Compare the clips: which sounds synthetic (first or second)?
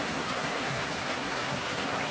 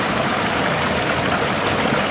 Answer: first